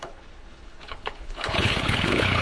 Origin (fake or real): fake